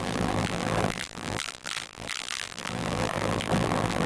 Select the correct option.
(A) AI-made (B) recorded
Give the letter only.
A